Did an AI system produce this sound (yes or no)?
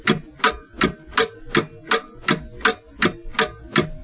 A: no